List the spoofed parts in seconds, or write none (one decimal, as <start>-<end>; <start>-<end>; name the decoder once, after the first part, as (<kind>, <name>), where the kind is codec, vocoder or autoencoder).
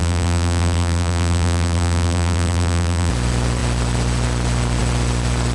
0.0-3.1 (vocoder, BigVGAN v2)